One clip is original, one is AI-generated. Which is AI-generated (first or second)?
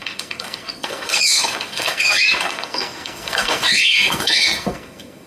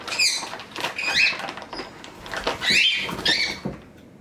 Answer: first